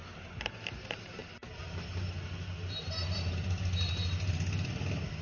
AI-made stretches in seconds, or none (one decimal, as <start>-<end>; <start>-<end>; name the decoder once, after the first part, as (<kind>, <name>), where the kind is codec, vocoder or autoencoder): none